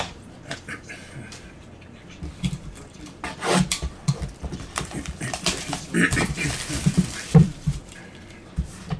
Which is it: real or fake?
fake